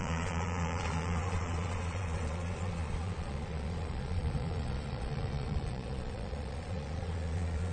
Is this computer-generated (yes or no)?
yes